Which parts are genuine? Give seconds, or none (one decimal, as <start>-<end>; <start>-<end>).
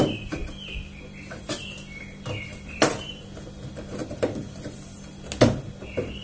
0.0-2.5; 3.2-4.0; 5.1-6.2